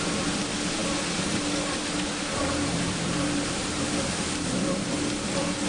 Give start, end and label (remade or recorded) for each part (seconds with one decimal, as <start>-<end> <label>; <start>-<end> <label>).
0.0-2.3 recorded; 2.3-3.9 remade; 3.9-5.7 recorded